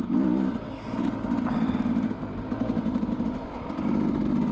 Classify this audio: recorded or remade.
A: recorded